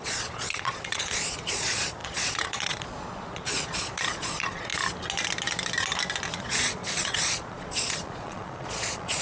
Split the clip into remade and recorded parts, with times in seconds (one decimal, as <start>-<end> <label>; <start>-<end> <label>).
0.0-4.7 remade; 4.7-6.4 recorded; 6.4-9.2 remade